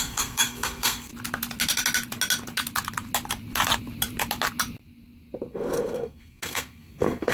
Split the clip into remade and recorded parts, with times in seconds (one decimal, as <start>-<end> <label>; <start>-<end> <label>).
0.0-1.1 remade; 1.1-5.5 recorded; 5.5-7.3 remade